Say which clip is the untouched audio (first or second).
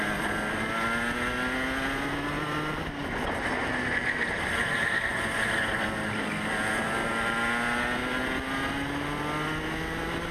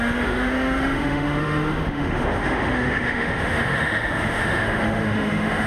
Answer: first